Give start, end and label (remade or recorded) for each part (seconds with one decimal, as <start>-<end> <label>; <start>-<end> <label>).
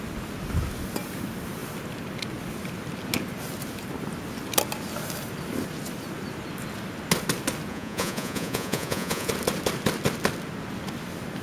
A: 0.0-7.7 recorded; 7.7-9.3 remade; 9.3-11.4 recorded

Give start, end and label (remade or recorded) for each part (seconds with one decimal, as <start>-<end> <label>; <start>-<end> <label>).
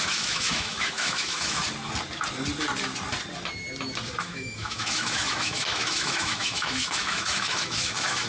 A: 0.0-1.6 remade; 1.6-4.2 recorded; 4.2-8.3 remade